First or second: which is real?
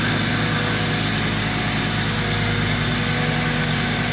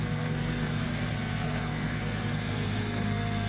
first